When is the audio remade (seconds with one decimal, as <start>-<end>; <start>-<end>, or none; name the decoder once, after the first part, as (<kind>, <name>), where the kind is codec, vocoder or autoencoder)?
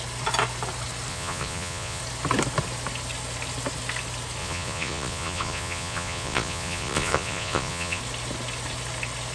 1.1-2.0 (vocoder, Vocos); 4.4-8.0